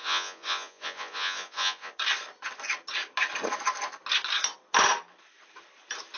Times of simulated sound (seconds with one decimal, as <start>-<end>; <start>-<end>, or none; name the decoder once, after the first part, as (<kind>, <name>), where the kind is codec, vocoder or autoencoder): 0.0-1.9 (vocoder, Vocos)